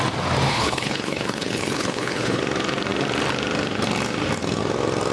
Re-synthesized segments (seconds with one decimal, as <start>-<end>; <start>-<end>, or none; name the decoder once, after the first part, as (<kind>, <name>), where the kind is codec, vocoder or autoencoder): 0.5-2.4 (codec, HILCodec)